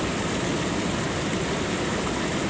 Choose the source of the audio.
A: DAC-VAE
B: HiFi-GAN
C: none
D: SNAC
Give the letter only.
C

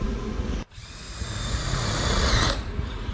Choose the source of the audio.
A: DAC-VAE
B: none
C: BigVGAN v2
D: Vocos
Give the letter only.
D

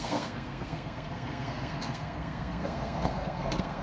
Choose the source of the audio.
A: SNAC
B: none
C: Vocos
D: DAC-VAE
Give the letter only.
A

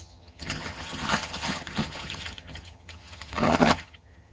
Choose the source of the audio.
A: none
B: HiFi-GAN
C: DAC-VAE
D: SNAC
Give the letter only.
B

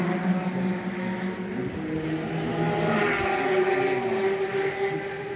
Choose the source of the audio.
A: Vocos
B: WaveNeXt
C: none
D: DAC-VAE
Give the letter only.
C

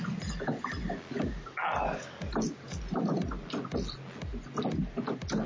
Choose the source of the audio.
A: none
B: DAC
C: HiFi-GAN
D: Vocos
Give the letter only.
A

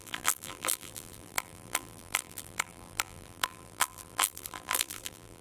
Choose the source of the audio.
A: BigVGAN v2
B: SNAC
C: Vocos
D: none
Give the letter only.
A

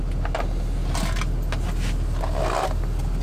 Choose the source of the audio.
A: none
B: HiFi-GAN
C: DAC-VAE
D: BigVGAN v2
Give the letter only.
A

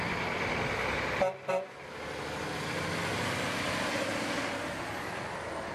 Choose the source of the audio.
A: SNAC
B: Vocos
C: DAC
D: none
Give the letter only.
D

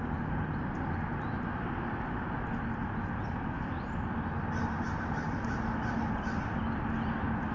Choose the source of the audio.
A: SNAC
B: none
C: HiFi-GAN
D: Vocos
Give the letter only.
B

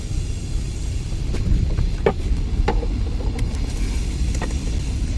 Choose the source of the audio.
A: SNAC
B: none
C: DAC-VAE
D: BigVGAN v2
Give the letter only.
B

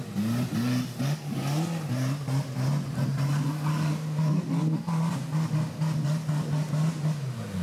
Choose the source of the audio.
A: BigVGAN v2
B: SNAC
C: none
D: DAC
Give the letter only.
C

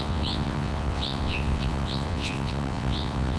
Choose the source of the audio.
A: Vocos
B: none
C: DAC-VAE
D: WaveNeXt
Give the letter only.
D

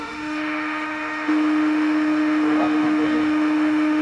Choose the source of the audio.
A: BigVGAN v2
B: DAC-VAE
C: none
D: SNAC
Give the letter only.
B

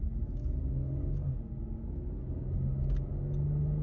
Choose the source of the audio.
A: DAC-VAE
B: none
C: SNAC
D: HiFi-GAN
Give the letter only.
B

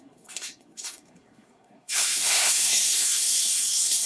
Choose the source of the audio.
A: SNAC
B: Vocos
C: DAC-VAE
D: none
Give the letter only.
A